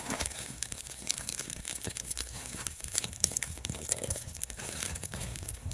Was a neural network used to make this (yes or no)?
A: yes